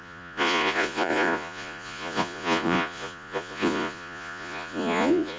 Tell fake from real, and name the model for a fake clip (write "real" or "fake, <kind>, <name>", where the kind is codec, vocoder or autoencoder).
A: fake, vocoder, Vocos